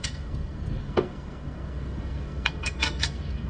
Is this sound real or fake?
fake